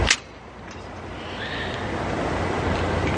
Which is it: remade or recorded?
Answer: recorded